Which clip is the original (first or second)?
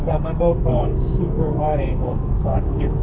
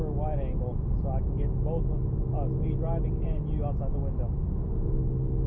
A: second